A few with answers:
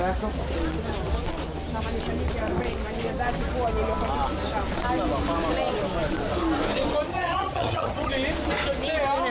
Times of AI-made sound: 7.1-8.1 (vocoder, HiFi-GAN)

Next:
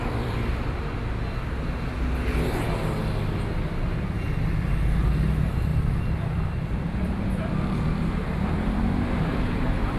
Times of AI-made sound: 0.0-0.9 (vocoder, BigVGAN v2); 5.7-10.0

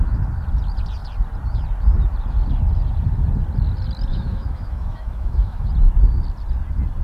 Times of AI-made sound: 4.1-5.7 (autoencoder, DAC-VAE)

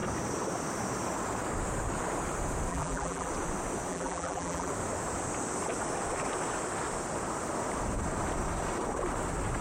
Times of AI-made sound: 2.7-3.3 (vocoder, BigVGAN v2); 3.9-4.7

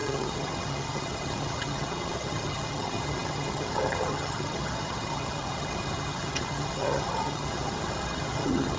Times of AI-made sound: 0.0-8.8 (vocoder, HiFi-GAN)

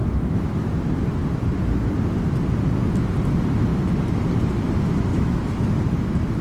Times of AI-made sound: 0.0-0.7 (autoencoder, DAC-VAE); 5.1-5.7

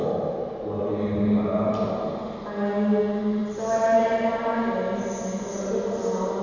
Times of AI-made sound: none

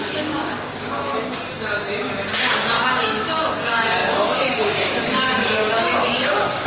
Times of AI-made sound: 0.0-1.1 (codec, DAC); 3.0-6.7